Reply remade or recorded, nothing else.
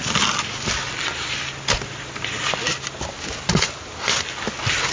recorded